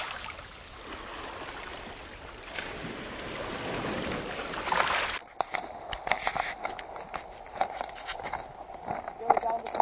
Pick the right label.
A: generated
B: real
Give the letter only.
B